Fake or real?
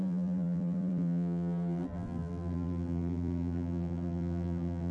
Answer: fake